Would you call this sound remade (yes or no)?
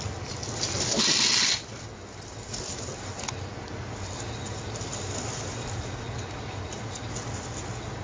no